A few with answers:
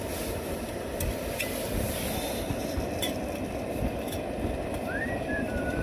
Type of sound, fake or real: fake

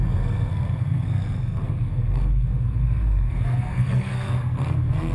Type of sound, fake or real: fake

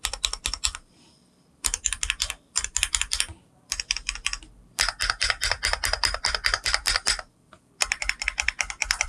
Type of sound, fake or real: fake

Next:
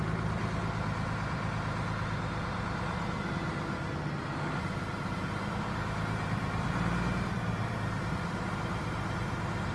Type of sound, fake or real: fake